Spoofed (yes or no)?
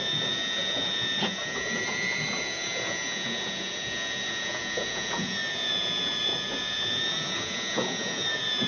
yes